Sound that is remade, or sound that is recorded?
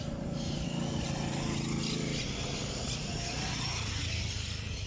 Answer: recorded